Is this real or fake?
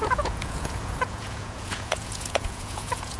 fake